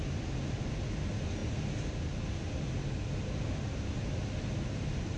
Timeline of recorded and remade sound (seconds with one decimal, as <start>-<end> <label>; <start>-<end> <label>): 0.0-5.2 recorded